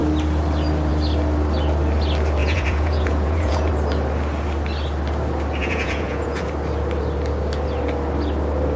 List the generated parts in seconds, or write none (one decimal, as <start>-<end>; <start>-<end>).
2.4-3.7; 5.6-6.4